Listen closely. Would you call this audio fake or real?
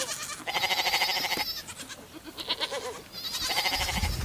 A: real